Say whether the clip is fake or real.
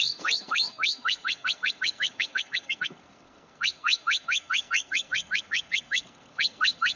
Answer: fake